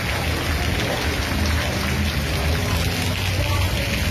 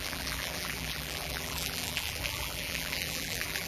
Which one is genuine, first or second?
first